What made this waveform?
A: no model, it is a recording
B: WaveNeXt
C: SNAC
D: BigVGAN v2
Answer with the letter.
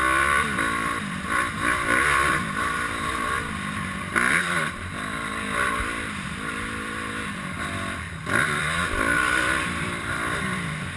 D